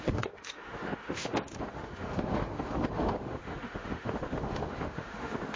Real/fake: fake